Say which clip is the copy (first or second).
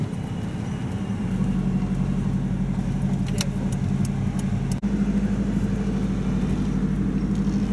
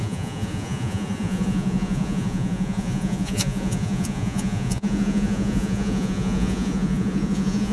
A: second